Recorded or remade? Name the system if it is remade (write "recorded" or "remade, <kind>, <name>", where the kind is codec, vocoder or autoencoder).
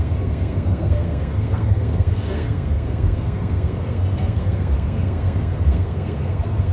remade, codec, SNAC